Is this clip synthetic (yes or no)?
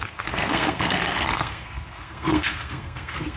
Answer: yes